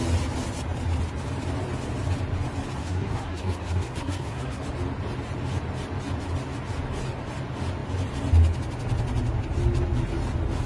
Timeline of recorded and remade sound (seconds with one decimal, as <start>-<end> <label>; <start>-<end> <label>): 0.0-2.8 recorded; 2.8-4.6 remade; 4.6-10.7 recorded